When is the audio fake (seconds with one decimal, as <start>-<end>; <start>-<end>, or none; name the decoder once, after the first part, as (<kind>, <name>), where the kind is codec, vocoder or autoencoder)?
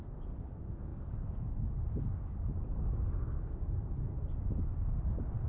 none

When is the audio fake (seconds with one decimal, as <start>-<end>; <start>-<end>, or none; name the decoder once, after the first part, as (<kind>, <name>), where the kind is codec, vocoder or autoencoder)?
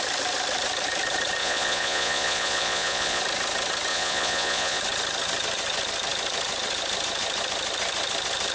1.4-3.2 (vocoder, Vocos); 3.9-4.8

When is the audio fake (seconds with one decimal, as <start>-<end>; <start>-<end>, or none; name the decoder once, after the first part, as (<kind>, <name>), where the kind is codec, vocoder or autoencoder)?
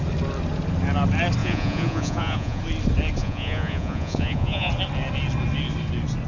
1.4-2.6 (vocoder, Vocos); 3.2-4.7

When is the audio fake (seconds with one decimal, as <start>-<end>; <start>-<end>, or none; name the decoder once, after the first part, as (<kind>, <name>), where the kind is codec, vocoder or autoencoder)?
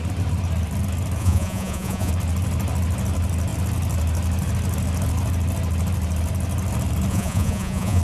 1.2-2.1 (vocoder, Vocos); 7.1-8.0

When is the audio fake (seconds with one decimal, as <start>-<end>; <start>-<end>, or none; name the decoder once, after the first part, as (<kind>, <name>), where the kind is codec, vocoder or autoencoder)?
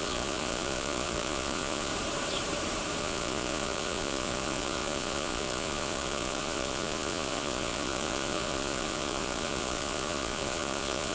0.0-1.9 (vocoder, Vocos); 3.0-11.1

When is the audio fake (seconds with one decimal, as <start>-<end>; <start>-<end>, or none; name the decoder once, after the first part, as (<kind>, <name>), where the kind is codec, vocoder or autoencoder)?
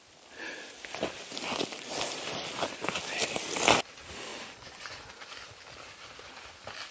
4.3-5.0 (vocoder, Vocos)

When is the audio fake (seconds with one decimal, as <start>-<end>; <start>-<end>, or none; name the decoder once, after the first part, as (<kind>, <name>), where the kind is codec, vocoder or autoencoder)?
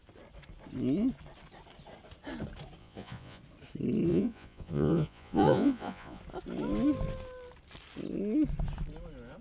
2.8-3.4 (vocoder, Vocos); 4.1-6.2